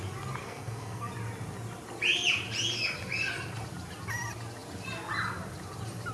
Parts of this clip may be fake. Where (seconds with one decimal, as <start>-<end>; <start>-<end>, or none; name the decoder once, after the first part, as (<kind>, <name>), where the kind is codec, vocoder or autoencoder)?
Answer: 0.4-1.1 (codec, SNAC)